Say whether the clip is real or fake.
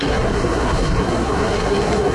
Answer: fake